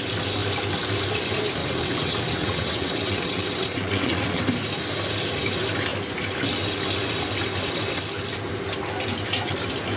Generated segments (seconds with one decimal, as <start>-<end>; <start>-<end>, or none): 1.6-4.4